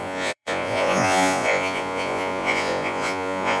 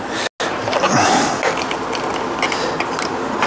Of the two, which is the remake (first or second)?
first